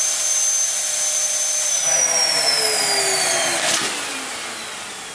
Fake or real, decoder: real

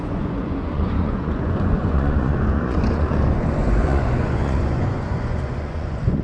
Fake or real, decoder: fake, vocoder, Vocos